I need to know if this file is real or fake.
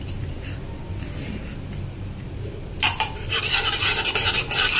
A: real